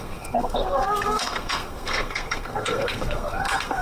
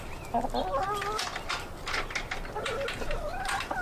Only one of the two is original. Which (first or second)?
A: second